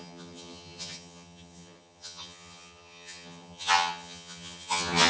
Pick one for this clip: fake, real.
fake